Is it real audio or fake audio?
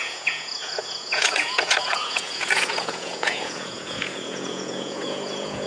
fake